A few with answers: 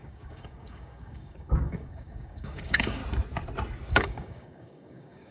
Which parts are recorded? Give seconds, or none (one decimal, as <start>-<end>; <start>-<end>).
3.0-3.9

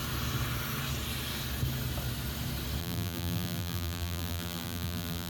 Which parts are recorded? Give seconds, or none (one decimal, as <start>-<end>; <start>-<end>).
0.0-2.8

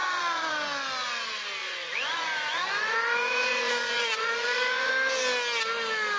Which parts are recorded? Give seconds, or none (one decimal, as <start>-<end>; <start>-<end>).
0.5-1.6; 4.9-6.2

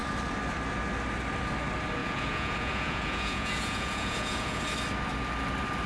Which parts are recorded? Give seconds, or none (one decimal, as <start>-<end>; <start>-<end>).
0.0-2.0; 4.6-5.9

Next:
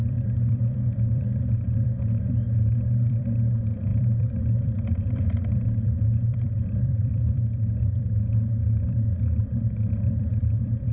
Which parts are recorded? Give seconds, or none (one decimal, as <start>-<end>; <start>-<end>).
none

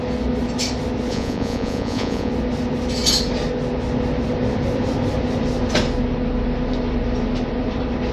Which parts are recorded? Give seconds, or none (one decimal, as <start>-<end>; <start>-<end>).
0.0-1.1; 2.3-8.1